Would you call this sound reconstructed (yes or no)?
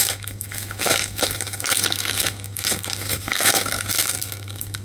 yes